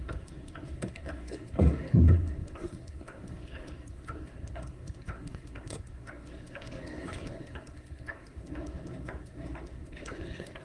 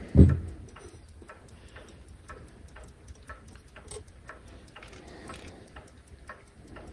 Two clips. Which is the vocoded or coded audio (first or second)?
first